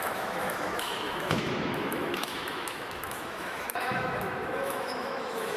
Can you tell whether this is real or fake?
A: fake